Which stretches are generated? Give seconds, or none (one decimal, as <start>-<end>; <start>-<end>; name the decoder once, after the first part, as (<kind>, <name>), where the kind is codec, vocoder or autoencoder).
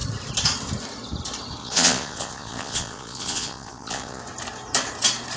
1.6-4.2 (vocoder, Vocos)